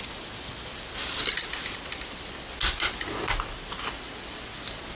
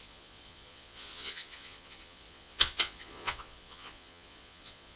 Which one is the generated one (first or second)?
second